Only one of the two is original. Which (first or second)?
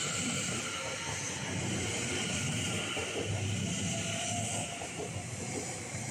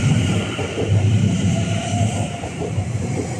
first